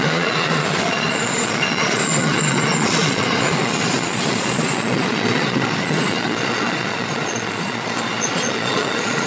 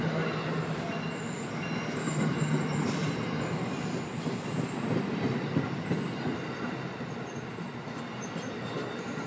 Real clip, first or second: second